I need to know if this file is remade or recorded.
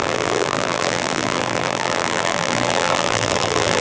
remade